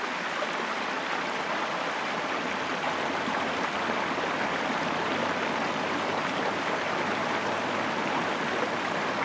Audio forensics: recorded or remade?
recorded